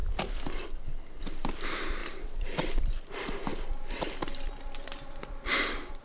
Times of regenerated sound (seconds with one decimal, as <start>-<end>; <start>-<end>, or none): 1.2-6.0